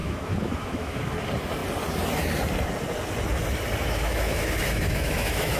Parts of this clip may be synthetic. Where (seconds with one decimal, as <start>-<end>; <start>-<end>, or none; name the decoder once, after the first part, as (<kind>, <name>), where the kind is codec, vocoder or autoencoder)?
0.0-1.0 (autoencoder, DAC-VAE); 3.8-5.6